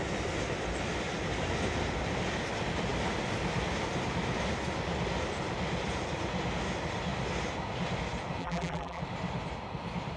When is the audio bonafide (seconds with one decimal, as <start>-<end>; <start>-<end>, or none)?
0.0-8.4; 9.0-10.2